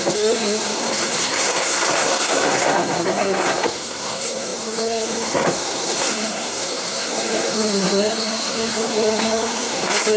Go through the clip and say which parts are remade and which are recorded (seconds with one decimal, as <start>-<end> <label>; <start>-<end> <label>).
0.0-10.2 remade